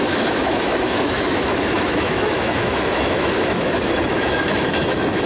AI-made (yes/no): yes